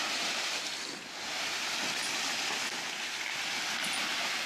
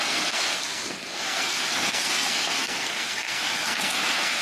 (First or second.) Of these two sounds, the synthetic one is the second